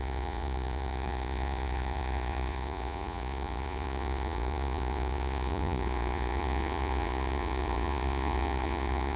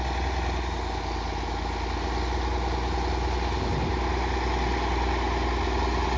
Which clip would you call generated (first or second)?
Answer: first